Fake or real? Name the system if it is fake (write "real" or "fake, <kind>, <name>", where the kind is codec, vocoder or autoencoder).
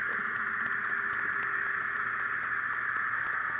real